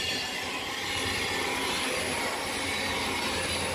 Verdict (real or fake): real